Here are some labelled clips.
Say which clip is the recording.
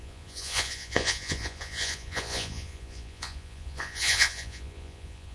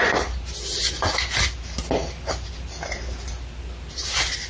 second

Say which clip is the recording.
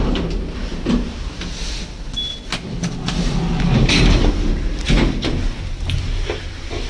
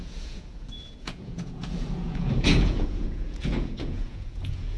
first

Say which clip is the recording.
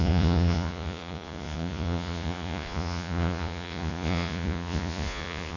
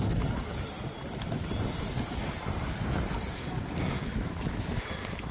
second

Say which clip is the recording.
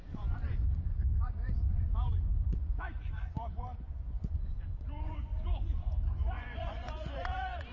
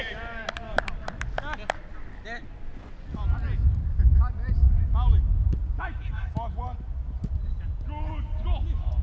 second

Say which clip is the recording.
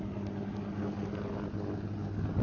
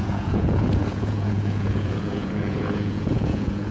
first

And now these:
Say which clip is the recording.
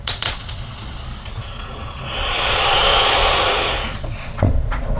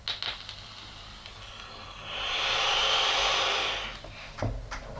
second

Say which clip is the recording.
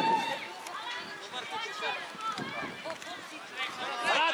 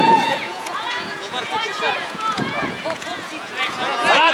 first